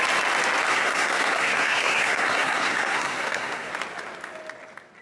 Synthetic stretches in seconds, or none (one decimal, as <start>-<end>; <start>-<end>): 0.7-3.7